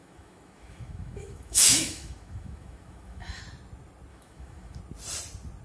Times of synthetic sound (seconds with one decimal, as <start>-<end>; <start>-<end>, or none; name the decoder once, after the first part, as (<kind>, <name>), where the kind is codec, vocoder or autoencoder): 0.0-3.4 (autoencoder, DAC-VAE); 4.1-4.8